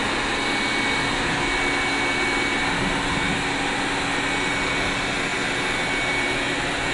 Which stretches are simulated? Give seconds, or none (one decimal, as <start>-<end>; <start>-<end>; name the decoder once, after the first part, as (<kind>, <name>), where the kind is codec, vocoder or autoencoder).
none